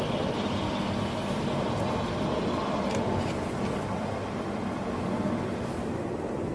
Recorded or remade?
remade